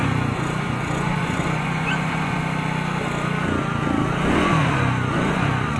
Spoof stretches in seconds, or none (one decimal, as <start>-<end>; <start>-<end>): 0.0-2.4; 4.1-5.8